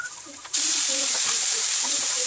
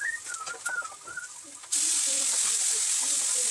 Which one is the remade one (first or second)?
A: first